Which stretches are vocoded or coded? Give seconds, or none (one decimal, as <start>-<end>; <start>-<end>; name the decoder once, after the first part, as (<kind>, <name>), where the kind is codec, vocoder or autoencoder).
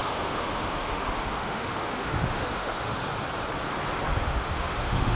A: 0.0-3.0 (autoencoder, DAC-VAE); 4.2-5.2